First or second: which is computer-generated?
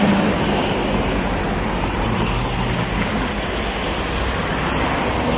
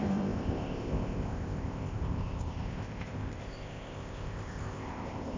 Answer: second